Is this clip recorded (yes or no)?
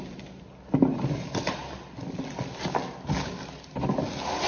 yes